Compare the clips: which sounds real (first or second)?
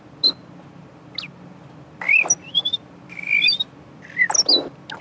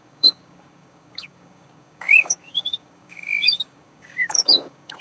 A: first